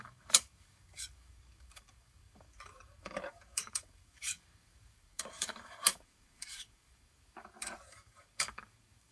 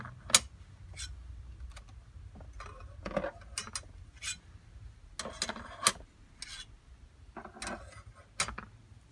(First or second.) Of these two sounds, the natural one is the second